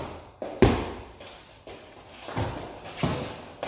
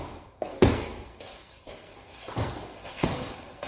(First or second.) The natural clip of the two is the first